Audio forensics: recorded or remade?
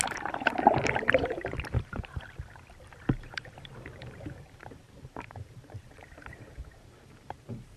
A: remade